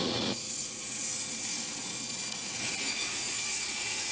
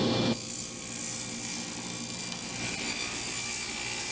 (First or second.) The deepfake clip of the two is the first